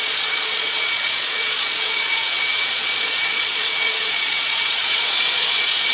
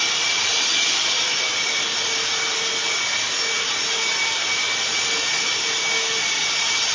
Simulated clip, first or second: first